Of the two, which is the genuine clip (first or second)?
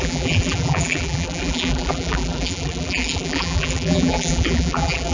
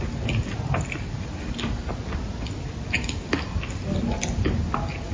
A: second